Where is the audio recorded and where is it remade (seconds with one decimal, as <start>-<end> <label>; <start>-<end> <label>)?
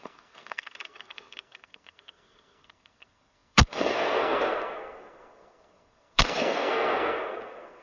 0.0-7.8 remade